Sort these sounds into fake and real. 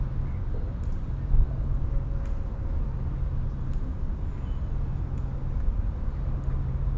real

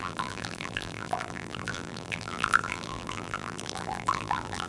fake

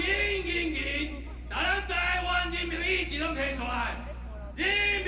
real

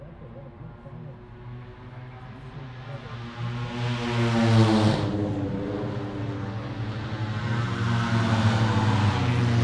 real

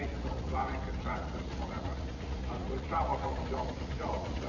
fake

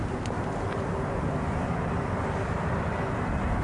real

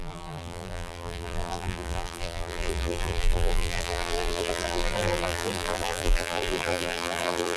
fake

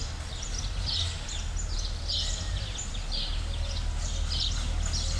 real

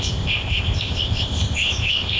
fake